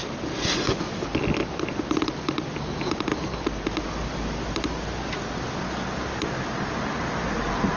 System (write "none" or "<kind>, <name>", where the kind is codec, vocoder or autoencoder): none